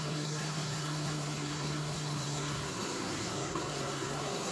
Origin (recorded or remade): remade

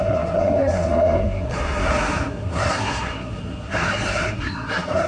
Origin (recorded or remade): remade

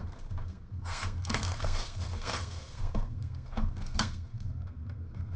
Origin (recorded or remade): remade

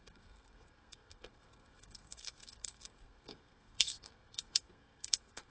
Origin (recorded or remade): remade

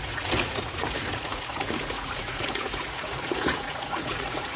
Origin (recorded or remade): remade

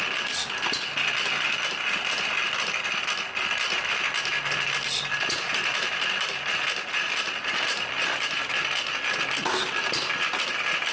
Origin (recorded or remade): recorded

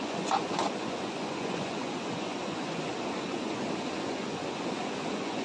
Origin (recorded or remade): remade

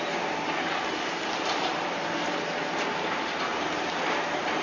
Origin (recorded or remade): remade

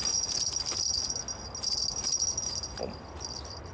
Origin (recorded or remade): recorded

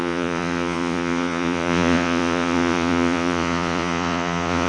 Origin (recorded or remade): remade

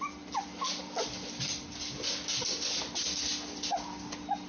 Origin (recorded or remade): recorded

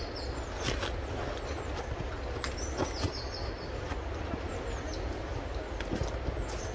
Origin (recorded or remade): recorded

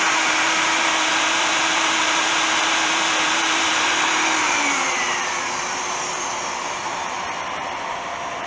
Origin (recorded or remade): remade